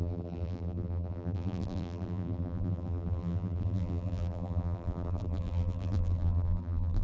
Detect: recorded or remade remade